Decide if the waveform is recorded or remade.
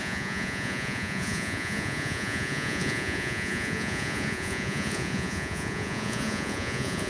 remade